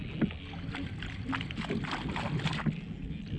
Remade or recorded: recorded